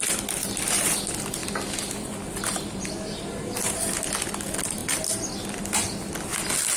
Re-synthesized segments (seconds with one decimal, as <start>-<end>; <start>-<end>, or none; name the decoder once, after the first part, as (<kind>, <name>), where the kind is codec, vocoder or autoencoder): none